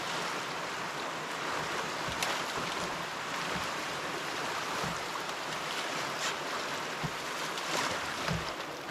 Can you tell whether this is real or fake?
fake